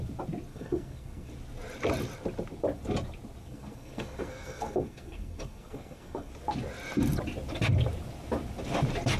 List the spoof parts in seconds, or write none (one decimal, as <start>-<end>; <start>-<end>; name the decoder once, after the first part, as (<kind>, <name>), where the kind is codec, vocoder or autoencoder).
0.5-1.3 (codec, SNAC); 3.4-6.3